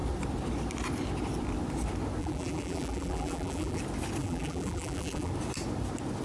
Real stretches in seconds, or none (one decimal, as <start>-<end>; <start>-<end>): 0.0-2.2; 3.8-4.2; 5.3-6.2